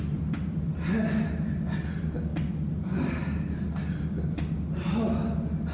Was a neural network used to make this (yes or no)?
no